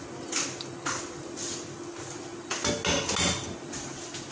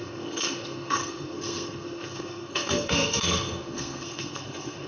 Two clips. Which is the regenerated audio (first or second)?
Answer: second